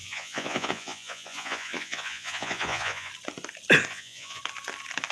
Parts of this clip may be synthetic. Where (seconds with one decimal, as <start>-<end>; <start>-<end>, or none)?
0.0-3.1; 3.9-4.4